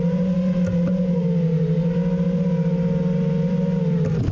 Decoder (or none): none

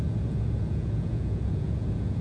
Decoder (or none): vocoder, Vocos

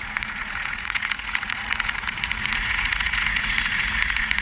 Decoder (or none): vocoder, Vocos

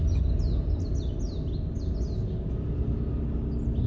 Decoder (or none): none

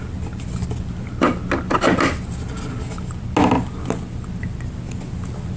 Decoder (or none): none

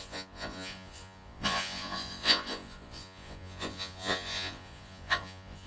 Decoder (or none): vocoder, Vocos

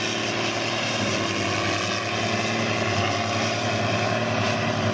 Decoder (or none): none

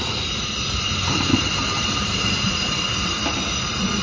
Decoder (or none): none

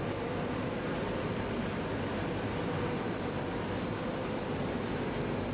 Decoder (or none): none